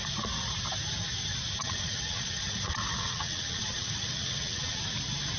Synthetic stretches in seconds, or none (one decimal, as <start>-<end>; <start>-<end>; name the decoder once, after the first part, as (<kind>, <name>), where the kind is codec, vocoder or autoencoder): 1.6-4.8 (vocoder, WaveNeXt)